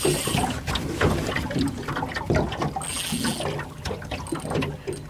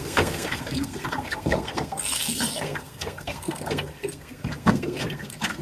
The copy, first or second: second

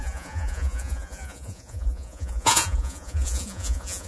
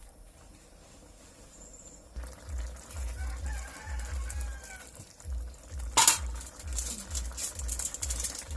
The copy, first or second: first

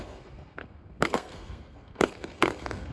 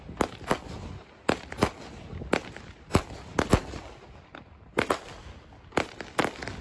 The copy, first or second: first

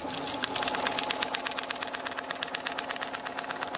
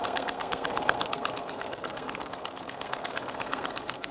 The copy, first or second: second